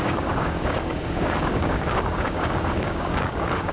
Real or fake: fake